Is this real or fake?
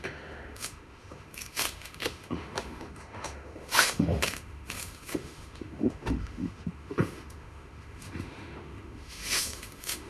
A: fake